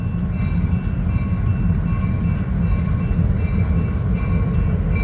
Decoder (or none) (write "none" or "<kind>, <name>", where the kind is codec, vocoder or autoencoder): none